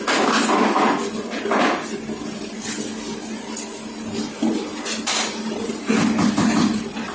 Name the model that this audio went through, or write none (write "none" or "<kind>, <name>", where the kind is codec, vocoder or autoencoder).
none